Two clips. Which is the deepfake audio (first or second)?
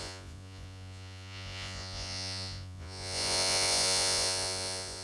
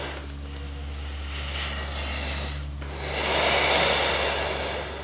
first